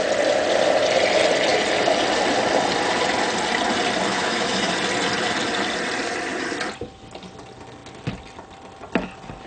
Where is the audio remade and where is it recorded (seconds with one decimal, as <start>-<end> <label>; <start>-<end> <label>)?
0.0-4.1 recorded; 4.1-4.7 remade; 4.7-9.5 recorded